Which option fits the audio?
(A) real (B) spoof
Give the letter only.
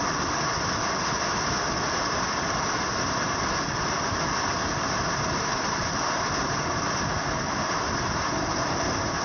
B